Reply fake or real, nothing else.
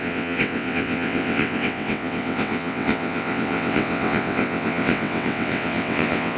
fake